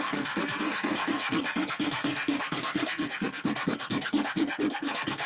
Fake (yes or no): yes